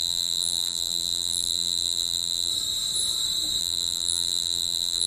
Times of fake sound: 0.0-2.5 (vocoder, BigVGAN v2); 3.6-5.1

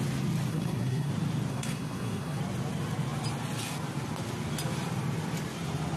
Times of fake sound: 0.5-1.1 (codec, SNAC); 1.5-2.4

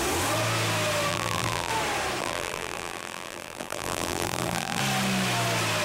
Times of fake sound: 1.1-1.7 (vocoder, BigVGAN v2); 2.2-4.8

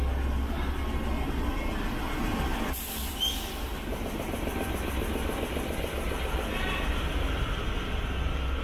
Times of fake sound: 2.5-7.6 (vocoder, BigVGAN v2)

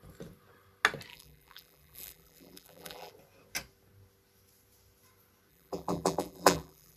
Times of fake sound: 1.1-3.1 (vocoder, BigVGAN v2); 5.5-7.0

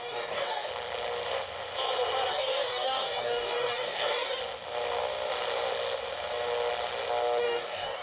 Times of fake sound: 0.0-0.7 (codec, DAC); 2.3-4.4; 7.4-8.0

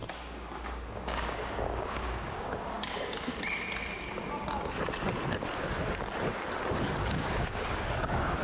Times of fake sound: 0.0-3.3 (codec, DAC); 7.1-8.4

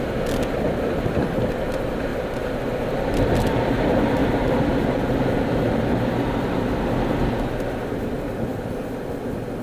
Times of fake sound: 2.1-2.6 (vocoder, BigVGAN v2); 4.2-4.7